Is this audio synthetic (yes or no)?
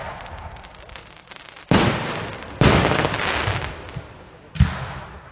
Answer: no